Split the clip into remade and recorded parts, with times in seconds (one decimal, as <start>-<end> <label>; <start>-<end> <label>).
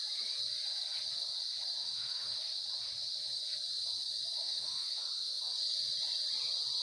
0.0-1.8 recorded; 1.8-2.4 remade; 2.4-4.4 recorded; 4.4-5.4 remade; 5.4-6.8 recorded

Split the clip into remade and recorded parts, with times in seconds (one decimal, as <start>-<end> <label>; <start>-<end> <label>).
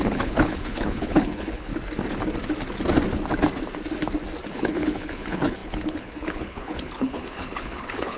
0.0-1.7 remade; 1.7-4.5 recorded; 4.5-8.2 remade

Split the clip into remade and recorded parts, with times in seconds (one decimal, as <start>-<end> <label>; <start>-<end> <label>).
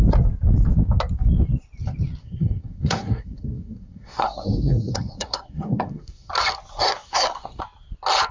0.0-2.2 recorded; 2.2-6.3 remade; 6.3-6.7 recorded; 6.7-7.6 remade; 7.6-8.3 recorded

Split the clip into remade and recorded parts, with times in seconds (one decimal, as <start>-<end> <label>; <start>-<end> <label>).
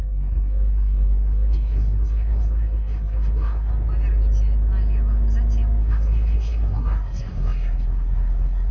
0.0-3.7 remade; 3.7-5.8 recorded; 5.8-8.7 remade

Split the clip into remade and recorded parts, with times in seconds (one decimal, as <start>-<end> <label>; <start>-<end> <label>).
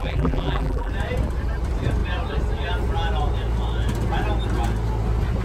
0.0-0.9 remade; 0.9-5.4 recorded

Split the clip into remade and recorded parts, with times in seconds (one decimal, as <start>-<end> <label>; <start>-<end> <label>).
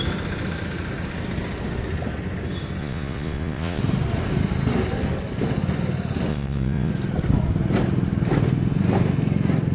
0.0-2.8 recorded; 2.8-3.8 remade; 3.8-6.3 recorded; 6.3-6.9 remade; 6.9-9.7 recorded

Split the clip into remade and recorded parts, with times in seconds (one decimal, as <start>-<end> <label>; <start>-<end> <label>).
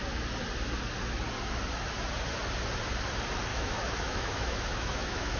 0.0-3.5 recorded; 3.5-5.4 remade